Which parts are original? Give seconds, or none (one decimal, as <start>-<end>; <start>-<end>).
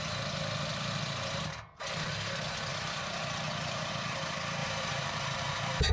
0.0-0.7; 1.4-2.7; 3.9-4.6